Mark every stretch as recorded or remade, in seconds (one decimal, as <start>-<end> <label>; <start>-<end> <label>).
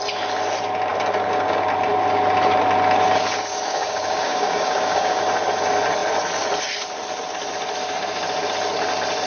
0.0-3.5 recorded; 3.5-5.2 remade; 5.2-9.3 recorded